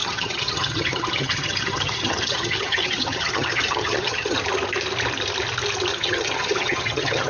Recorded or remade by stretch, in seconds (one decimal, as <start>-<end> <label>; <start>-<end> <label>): 0.0-4.4 remade; 4.4-5.9 recorded; 5.9-7.3 remade